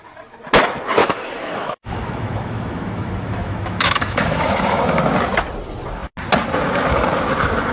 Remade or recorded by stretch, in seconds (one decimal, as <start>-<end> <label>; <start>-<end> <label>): 0.0-1.0 recorded; 1.0-5.0 remade; 5.0-7.7 recorded

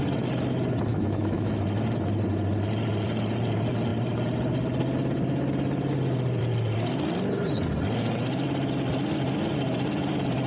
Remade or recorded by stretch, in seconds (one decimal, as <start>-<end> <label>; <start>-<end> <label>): 0.0-0.9 recorded; 0.9-1.6 remade; 1.6-10.5 recorded

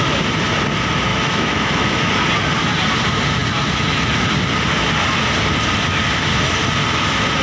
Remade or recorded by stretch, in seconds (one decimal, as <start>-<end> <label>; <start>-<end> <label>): 0.0-1.1 recorded; 1.1-2.1 remade; 2.1-7.4 recorded

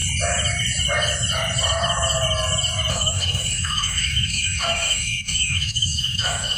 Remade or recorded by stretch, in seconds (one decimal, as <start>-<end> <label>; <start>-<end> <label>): 0.0-2.9 recorded; 2.9-6.6 remade

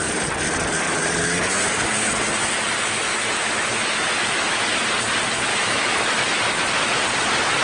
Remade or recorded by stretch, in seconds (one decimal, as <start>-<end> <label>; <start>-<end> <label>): 0.0-3.1 recorded; 3.1-4.6 remade; 4.6-5.5 recorded; 5.5-6.4 remade; 6.4-7.6 recorded

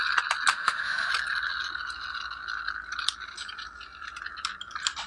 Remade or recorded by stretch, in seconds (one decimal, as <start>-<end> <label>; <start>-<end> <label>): 0.0-0.5 recorded; 0.5-1.1 remade; 1.1-5.1 recorded

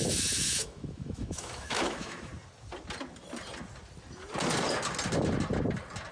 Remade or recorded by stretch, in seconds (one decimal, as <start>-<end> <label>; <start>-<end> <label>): 0.0-2.3 remade; 2.3-6.1 recorded

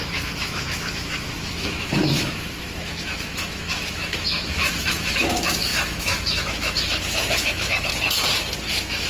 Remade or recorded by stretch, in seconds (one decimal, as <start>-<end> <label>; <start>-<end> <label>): 0.0-7.9 remade; 7.9-8.7 recorded; 8.7-9.1 remade